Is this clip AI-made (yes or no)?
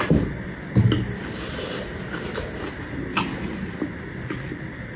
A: no